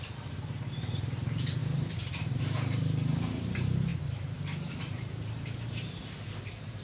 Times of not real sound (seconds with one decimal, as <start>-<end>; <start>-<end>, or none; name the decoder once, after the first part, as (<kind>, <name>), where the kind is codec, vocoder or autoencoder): 0.0-3.9 (vocoder, BigVGAN v2); 4.7-6.8